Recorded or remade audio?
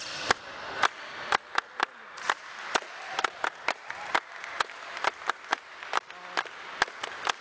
recorded